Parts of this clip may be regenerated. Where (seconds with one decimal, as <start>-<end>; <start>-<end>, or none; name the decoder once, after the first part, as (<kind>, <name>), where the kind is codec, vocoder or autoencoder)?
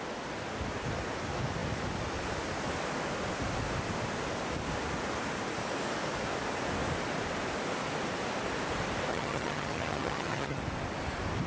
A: 9.1-10.6 (vocoder, HiFi-GAN)